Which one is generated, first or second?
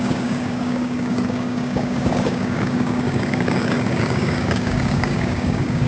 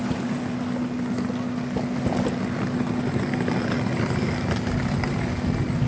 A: first